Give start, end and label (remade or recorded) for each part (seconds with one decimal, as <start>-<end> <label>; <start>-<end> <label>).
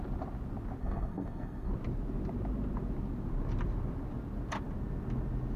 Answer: 0.0-0.8 recorded; 0.8-1.7 remade; 1.7-5.6 recorded